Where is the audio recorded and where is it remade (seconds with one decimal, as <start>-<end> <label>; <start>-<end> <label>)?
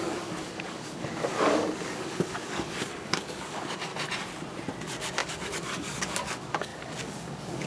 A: 0.0-3.9 remade; 3.9-4.8 recorded; 4.8-7.7 remade